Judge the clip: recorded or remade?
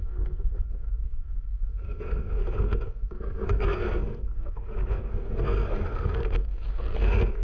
remade